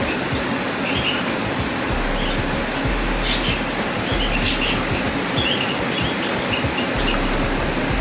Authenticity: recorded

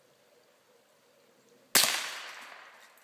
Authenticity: recorded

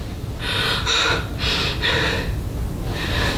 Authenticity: recorded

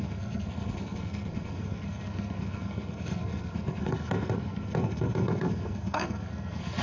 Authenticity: remade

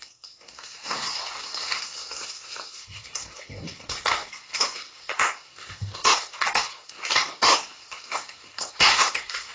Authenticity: remade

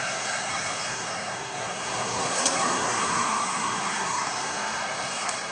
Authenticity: remade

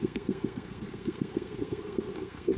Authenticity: remade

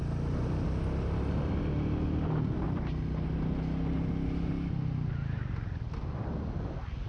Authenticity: recorded